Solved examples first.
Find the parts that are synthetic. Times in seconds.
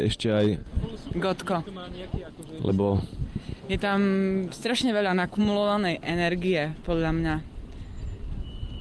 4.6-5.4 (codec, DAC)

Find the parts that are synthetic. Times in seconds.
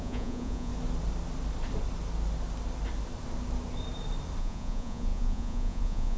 0.0-0.7 (vocoder, Vocos); 4.4-6.2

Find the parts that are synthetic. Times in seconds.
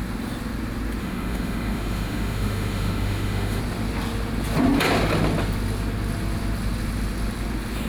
1.0-3.6 (autoencoder, DAC-VAE)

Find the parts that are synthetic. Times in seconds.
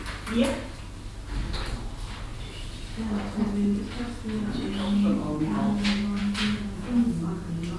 none